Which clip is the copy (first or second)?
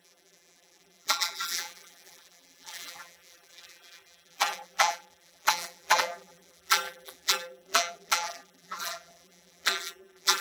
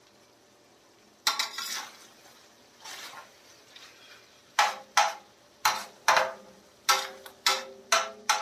first